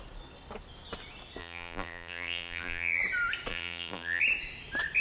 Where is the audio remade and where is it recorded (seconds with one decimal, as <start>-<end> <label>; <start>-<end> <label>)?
0.0-1.4 recorded; 1.4-3.0 remade; 3.0-3.5 recorded; 3.5-4.2 remade; 4.2-5.0 recorded